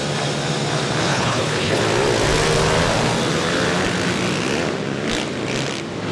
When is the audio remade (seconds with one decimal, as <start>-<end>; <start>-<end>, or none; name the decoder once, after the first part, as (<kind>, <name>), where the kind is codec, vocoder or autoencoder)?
1.1-1.8 (codec, HILCodec)